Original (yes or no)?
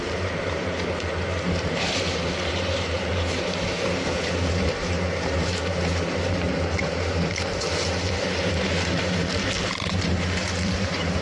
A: no